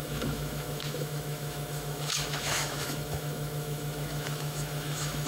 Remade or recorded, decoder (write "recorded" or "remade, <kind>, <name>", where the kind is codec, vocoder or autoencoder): remade, autoencoder, DAC-VAE